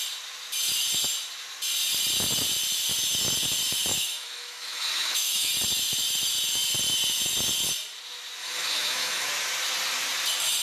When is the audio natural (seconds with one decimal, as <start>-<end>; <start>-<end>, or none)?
0.0-3.9; 5.5-8.4; 9.3-10.6